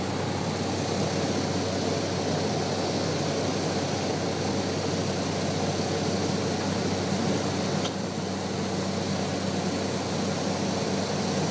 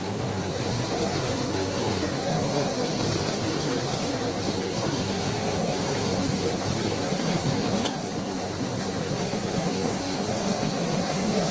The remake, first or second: second